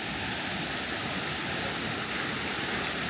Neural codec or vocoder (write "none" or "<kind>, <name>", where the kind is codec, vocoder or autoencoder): none